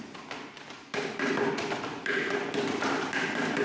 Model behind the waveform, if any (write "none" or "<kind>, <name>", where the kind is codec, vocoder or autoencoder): none